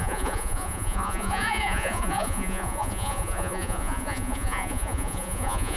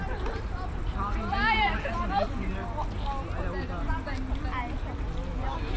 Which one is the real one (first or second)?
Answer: second